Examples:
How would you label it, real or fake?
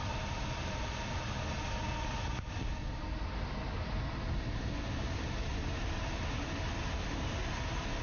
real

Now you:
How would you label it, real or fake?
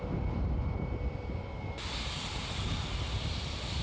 real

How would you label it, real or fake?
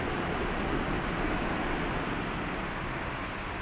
real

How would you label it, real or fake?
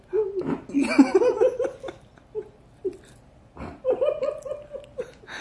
real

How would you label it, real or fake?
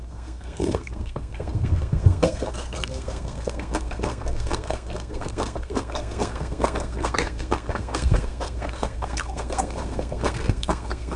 fake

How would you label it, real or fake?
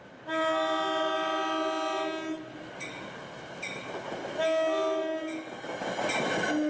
real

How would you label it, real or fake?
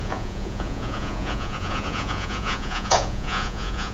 fake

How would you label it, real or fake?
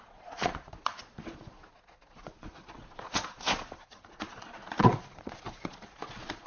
fake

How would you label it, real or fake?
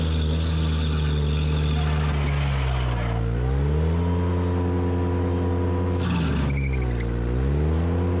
real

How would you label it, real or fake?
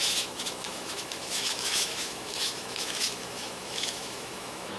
fake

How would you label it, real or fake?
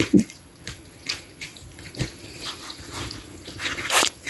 fake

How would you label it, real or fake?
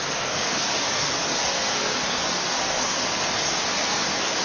fake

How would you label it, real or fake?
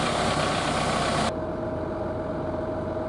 real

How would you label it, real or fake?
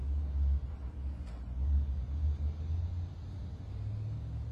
real